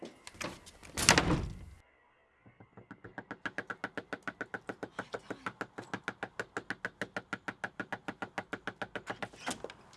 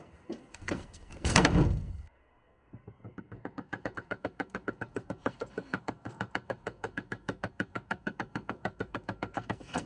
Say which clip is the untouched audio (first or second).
first